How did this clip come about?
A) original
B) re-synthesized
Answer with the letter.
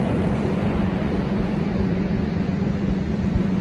B